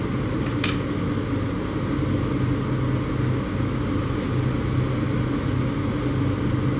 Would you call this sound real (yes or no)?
yes